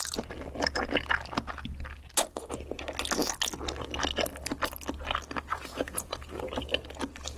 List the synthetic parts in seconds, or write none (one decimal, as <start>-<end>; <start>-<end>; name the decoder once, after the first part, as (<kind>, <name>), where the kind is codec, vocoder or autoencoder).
5.5-6.4 (vocoder, Vocos)